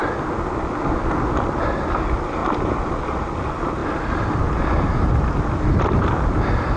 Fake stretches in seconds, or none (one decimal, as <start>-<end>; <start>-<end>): none